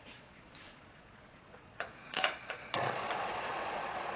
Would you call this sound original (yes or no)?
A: no